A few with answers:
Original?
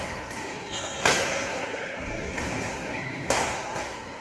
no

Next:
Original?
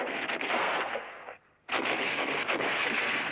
no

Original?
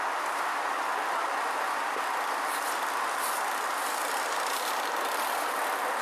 yes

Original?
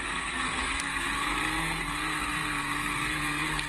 no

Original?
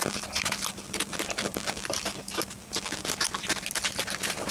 yes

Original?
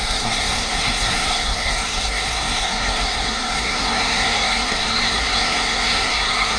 no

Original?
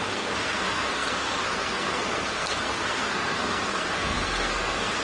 no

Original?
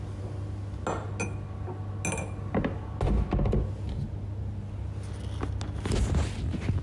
yes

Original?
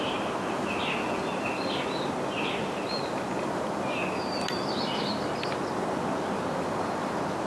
yes